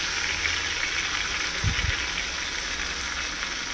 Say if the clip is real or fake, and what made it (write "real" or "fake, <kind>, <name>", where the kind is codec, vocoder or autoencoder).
real